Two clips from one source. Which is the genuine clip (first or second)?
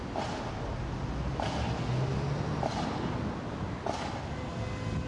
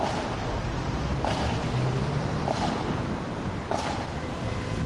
first